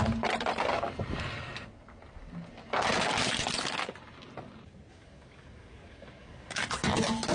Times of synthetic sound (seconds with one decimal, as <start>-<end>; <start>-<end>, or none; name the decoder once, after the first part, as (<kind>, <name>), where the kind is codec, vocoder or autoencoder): 4.9-6.6 (codec, DAC)